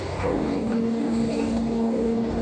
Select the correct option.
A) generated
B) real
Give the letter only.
A